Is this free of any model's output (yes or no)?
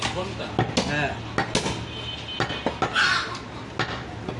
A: yes